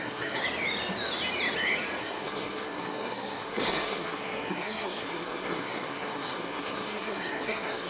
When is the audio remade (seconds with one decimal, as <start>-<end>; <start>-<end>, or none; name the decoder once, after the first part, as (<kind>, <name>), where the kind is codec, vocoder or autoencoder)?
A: 0.0-0.4 (codec, SNAC); 2.0-7.9